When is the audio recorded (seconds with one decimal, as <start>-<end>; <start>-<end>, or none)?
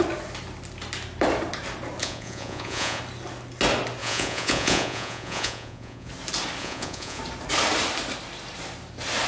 0.0-2.0; 3.0-4.0; 6.1-6.6; 7.2-9.3